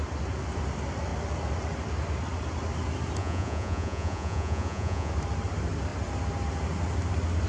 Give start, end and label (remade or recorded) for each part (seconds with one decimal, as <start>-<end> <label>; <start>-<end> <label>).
0.0-3.2 recorded; 3.2-5.1 remade; 5.1-7.5 recorded